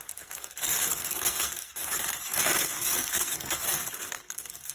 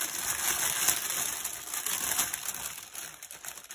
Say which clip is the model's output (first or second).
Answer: first